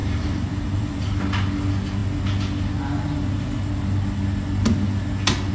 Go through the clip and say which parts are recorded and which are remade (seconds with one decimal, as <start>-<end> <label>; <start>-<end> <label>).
0.0-1.2 remade; 1.2-5.5 recorded